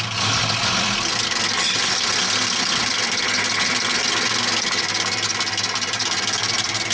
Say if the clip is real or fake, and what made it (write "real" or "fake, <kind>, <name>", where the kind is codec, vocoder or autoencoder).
real